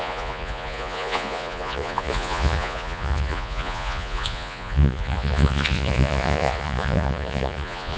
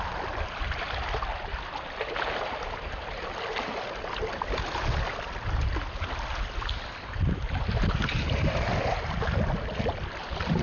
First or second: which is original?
second